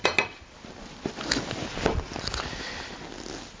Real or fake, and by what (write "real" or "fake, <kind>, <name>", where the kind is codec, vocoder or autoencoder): real